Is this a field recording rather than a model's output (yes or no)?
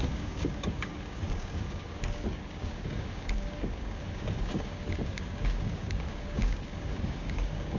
no